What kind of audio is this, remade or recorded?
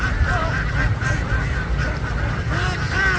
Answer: recorded